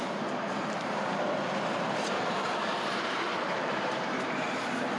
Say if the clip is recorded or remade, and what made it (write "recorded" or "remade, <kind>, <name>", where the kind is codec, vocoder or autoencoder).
remade, vocoder, BigVGAN v2